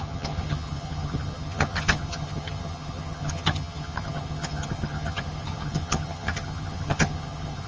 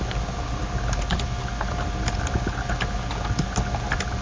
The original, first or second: second